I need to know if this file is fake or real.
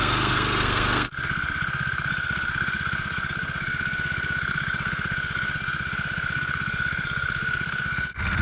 fake